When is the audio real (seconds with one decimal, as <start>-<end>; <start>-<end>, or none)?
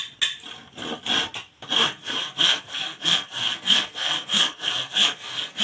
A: 0.0-2.0